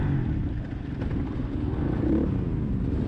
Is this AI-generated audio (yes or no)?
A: no